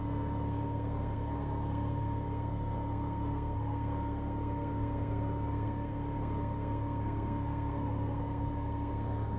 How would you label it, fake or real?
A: fake